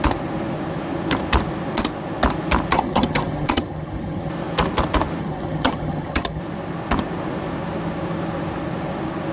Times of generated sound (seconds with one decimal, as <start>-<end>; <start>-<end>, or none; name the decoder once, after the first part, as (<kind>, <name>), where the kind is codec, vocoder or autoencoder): 2.7-4.3 (vocoder, HiFi-GAN); 5.2-6.4